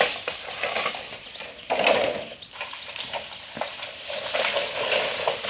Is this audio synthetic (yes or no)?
no